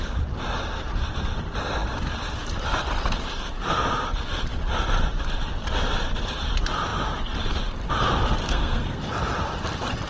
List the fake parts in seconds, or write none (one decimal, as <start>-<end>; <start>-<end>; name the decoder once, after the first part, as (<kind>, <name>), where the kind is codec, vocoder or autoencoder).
8.4-9.0 (codec, SNAC)